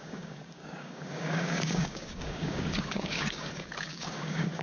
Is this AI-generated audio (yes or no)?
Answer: yes